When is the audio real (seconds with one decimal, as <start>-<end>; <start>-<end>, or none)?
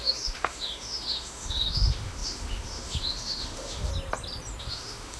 3.9-4.6